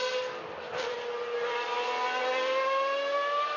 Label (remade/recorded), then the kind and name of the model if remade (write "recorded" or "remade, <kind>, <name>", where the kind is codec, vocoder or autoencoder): recorded